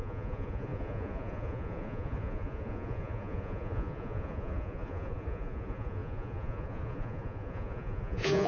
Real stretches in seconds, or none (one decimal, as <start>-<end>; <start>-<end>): none